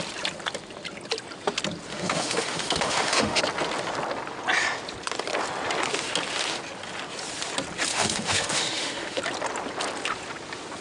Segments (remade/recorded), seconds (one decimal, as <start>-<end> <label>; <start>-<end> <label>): 0.0-1.9 recorded; 1.9-3.4 remade; 3.4-7.9 recorded; 7.9-9.2 remade; 9.2-10.8 recorded